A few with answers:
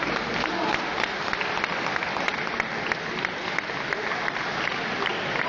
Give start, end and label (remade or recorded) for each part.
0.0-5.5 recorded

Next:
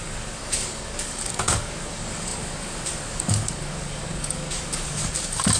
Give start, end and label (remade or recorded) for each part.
0.0-5.6 remade

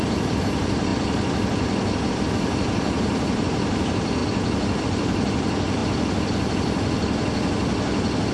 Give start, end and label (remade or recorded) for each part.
0.0-0.9 remade; 0.9-2.1 recorded; 2.1-4.2 remade; 4.2-4.8 recorded; 4.8-5.8 remade; 5.8-8.3 recorded